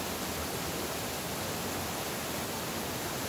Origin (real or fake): real